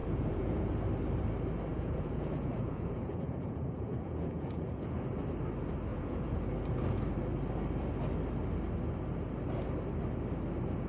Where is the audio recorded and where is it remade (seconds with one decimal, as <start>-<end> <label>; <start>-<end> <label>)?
0.0-0.7 remade; 0.7-1.7 recorded; 1.7-5.1 remade; 5.1-5.9 recorded; 5.9-6.4 remade; 6.4-10.9 recorded